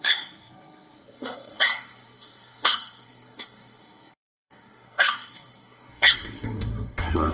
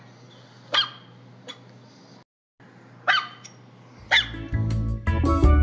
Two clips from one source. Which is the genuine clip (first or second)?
second